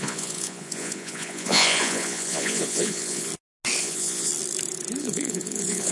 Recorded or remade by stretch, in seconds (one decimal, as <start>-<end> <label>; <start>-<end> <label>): 0.0-3.3 remade; 3.3-3.8 recorded; 3.8-4.3 remade; 4.3-5.0 recorded; 5.0-5.9 remade